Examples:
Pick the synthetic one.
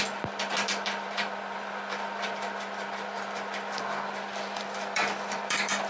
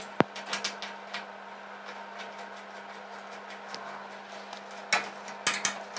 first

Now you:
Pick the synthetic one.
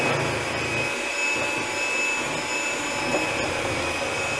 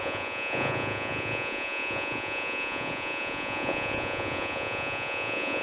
second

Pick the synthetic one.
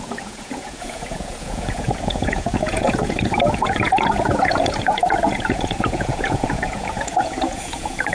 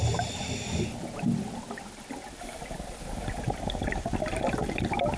first